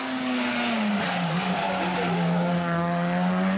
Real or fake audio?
fake